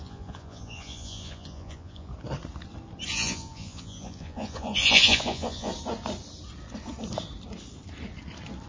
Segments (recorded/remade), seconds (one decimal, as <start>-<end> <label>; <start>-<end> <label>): 0.0-2.1 remade; 2.1-3.1 recorded; 3.1-5.7 remade; 5.7-8.7 recorded